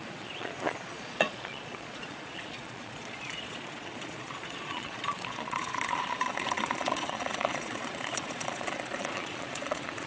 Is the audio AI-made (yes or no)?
yes